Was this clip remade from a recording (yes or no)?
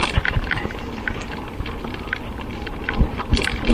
no